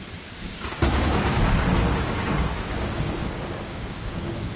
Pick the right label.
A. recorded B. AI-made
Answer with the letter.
B